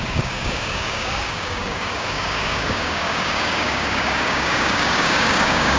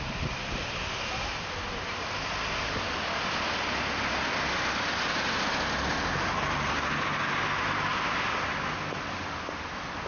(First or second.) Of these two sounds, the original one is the second